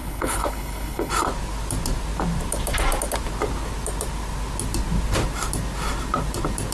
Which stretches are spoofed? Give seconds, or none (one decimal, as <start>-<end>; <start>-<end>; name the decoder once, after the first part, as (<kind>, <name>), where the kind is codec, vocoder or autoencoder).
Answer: 0.0-1.1 (codec, HILCodec)